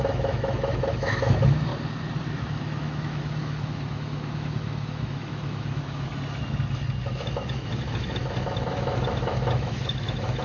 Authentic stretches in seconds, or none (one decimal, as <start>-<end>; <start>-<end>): 1.7-2.3; 6.1-7.0